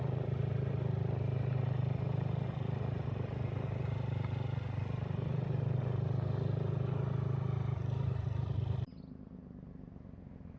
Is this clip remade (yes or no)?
no